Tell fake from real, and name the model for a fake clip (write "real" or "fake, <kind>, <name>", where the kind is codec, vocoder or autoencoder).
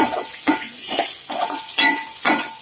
fake, vocoder, Vocos